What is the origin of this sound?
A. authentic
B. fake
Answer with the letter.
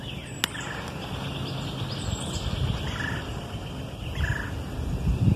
A